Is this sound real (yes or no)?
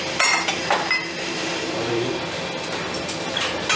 yes